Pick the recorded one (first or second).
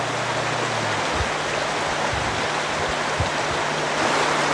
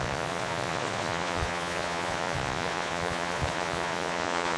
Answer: first